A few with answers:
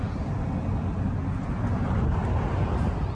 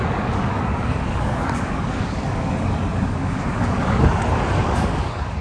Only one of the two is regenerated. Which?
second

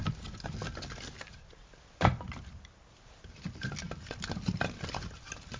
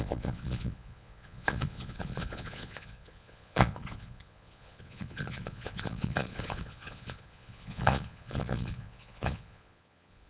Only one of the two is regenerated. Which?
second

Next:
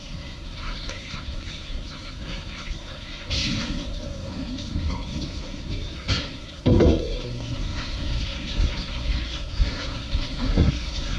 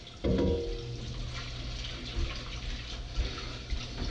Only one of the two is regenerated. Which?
first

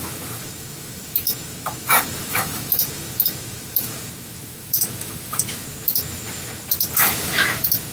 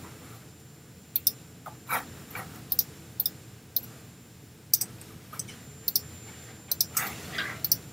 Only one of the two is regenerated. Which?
first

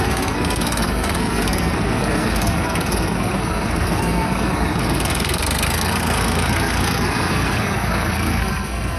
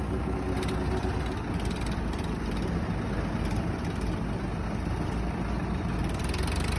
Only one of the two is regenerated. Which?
first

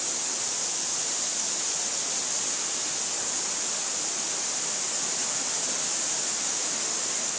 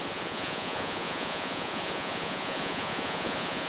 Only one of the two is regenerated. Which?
second